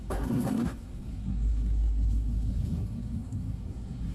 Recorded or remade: remade